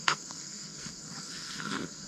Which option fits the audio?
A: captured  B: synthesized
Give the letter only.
B